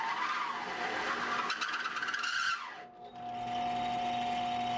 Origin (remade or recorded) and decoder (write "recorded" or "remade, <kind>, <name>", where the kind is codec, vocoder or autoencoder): recorded